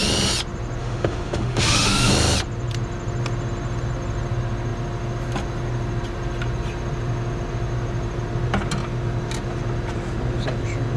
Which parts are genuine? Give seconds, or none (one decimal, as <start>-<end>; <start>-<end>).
0.0-0.8; 2.1-11.0